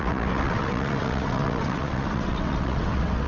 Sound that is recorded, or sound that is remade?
remade